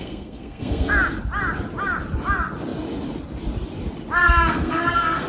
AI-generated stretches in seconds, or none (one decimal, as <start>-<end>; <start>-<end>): 0.0-0.9; 4.2-5.3